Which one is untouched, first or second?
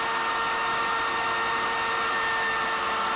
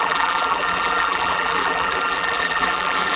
first